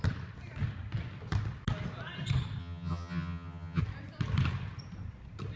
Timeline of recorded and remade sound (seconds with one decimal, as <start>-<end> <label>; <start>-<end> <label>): 0.0-2.6 recorded; 2.6-3.8 remade; 3.8-5.6 recorded